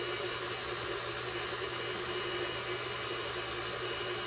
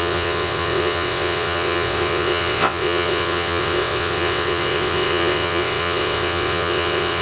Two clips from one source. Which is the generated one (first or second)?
second